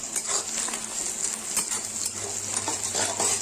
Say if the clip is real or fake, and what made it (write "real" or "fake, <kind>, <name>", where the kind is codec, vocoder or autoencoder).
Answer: real